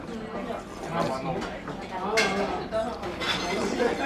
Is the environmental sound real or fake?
real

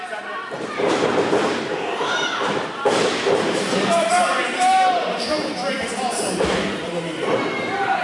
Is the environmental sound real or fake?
fake